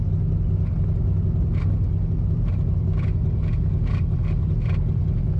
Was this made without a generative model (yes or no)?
yes